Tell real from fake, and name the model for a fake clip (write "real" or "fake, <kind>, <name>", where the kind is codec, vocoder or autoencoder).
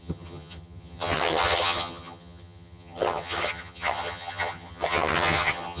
fake, vocoder, HiFi-GAN